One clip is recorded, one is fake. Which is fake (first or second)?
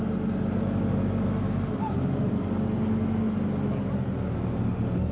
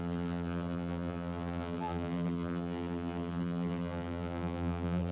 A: second